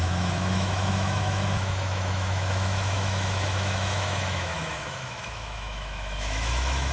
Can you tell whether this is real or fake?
fake